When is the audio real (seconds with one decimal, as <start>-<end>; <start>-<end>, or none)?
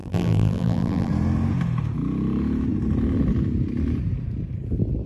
1.1-5.1